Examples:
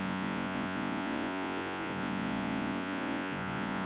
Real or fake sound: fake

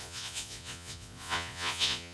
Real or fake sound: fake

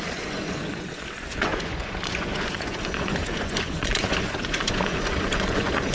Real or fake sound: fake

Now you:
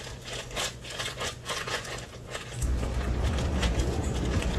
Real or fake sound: fake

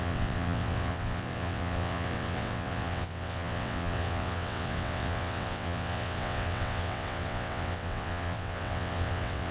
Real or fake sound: fake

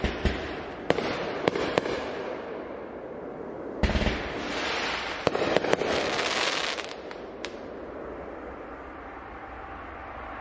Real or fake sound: real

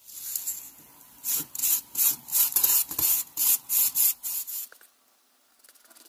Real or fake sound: real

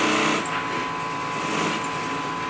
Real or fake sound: real